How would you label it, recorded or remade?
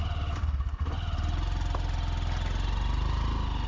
recorded